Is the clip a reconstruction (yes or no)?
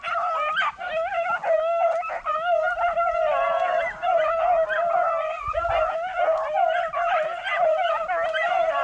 no